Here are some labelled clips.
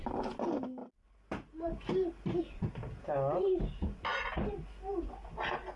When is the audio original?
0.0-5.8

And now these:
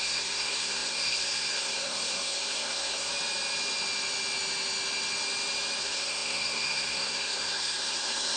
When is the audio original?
3.1-5.8